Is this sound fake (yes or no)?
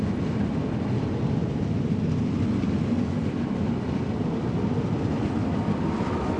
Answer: no